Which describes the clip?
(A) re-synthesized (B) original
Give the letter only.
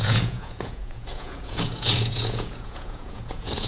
A